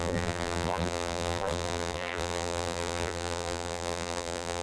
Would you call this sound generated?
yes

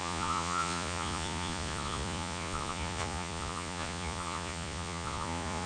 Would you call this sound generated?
yes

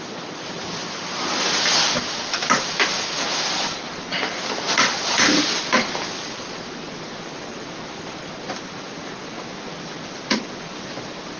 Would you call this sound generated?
no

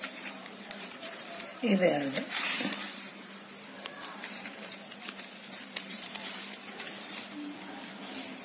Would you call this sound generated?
yes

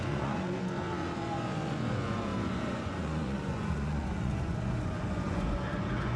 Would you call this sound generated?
yes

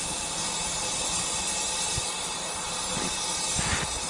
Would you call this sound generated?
no